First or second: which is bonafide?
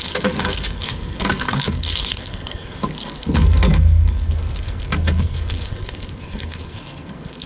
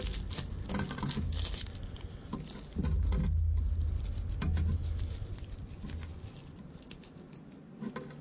second